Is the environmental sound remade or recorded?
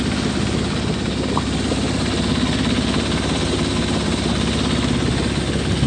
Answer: recorded